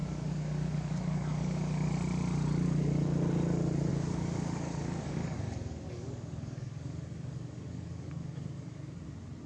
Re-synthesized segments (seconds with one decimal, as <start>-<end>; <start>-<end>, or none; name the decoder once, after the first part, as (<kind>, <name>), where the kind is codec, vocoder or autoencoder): 0.0-1.9 (codec, DAC); 3.9-9.0